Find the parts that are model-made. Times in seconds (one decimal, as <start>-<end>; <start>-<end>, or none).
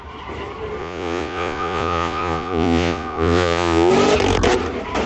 0.8-3.9